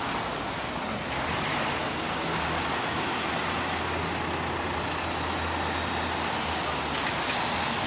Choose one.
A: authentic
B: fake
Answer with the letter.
A